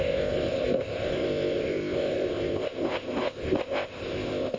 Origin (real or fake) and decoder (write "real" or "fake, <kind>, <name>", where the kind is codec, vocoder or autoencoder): fake, codec, ZipCodec